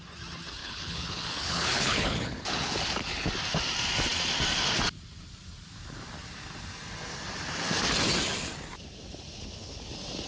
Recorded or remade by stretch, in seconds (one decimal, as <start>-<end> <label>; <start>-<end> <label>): 0.0-0.6 recorded; 0.6-3.3 remade; 3.3-9.4 recorded; 9.4-9.9 remade; 9.9-10.3 recorded